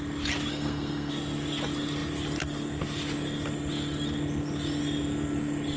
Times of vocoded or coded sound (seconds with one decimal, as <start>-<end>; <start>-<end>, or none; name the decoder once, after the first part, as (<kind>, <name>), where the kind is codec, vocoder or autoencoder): 0.5-1.1 (codec, SNAC)